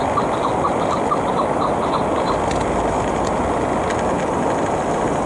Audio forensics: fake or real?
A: real